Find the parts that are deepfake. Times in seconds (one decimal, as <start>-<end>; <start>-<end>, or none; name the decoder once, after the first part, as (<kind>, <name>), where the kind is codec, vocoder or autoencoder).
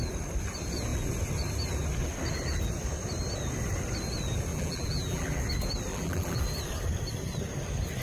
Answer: 4.5-5.4 (vocoder, BigVGAN v2); 5.9-6.4